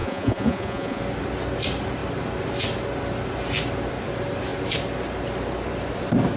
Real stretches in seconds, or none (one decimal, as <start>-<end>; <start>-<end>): 1.0-6.4